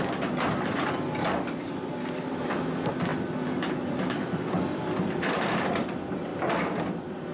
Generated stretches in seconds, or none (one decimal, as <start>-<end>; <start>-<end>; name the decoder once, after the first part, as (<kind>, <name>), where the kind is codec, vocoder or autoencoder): 0.0-3.1 (vocoder, BigVGAN v2); 4.0-6.3; 6.8-7.3